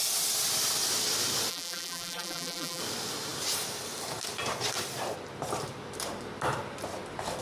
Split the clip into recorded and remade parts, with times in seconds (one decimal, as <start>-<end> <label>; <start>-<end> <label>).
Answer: 0.0-1.5 recorded; 1.5-2.8 remade; 2.8-7.4 recorded